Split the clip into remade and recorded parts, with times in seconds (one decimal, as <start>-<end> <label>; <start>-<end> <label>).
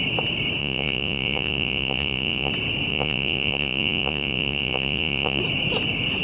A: 0.0-0.6 recorded; 0.6-2.5 remade; 2.5-2.9 recorded; 2.9-5.4 remade; 5.4-6.2 recorded